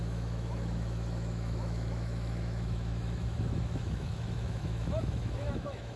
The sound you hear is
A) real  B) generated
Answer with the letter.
B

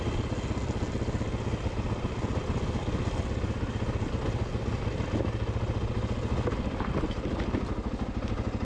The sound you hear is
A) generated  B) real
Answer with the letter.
B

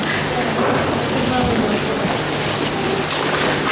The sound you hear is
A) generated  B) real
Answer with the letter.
B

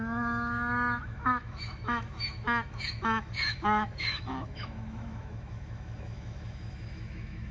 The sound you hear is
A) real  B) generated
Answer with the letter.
B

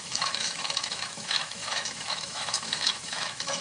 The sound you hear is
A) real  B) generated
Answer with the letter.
B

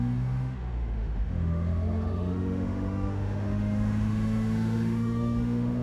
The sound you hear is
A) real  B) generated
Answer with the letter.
B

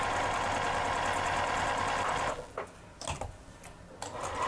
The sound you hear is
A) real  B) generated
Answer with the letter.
A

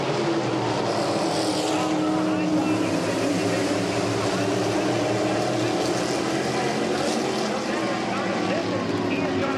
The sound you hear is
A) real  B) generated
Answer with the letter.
A